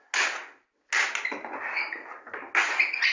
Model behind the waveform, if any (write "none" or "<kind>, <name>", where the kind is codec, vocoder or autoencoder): none